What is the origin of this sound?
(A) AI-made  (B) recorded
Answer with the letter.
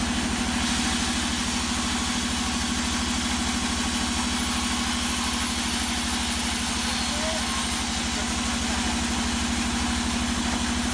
B